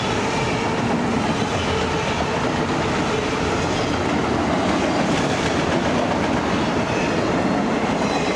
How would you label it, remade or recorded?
recorded